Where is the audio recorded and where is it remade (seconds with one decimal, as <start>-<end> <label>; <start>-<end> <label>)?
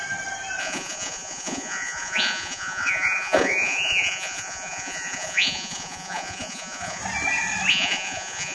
0.0-0.6 recorded; 0.6-7.0 remade; 7.0-7.7 recorded; 7.7-8.5 remade